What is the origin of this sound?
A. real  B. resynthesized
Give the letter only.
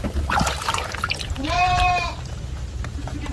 B